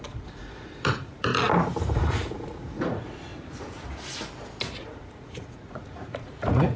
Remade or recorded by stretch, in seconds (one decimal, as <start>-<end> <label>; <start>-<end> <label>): 0.0-1.3 remade; 1.3-1.8 recorded; 1.8-3.3 remade; 3.3-4.8 recorded; 4.8-6.8 remade